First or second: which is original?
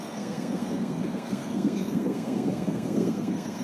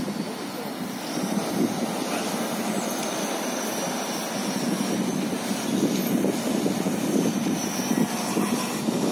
second